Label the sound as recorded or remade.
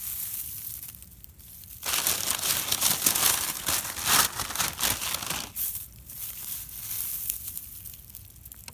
recorded